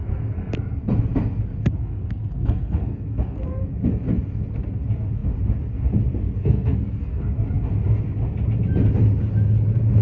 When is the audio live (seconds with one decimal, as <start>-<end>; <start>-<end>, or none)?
0.5-1.8; 3.4-6.4; 7.2-10.0